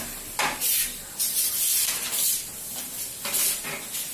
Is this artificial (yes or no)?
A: no